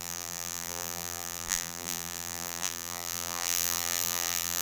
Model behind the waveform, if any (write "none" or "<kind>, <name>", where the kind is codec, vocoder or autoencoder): vocoder, BigVGAN v2